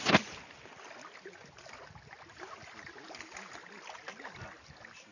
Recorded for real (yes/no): yes